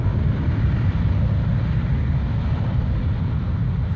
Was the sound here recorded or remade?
recorded